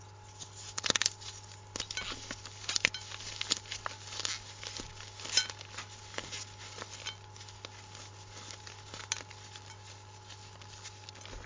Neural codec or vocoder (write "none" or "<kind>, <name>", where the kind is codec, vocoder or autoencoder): none